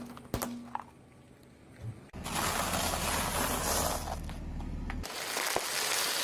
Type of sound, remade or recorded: recorded